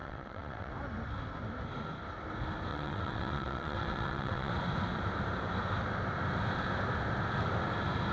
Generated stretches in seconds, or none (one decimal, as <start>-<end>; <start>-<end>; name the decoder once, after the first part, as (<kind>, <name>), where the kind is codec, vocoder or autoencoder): 0.0-0.7 (vocoder, WaveNeXt); 2.7-4.5